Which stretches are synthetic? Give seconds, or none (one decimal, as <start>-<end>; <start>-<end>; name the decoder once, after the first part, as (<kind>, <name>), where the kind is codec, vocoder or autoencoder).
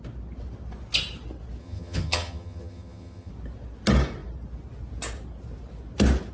1.6-3.3 (vocoder, HiFi-GAN)